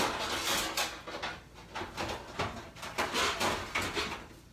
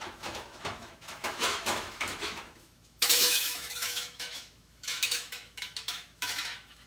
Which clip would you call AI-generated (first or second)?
second